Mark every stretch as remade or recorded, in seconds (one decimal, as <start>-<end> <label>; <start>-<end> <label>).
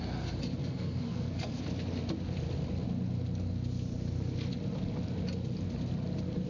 0.0-0.6 recorded; 0.6-1.6 remade; 1.6-6.5 recorded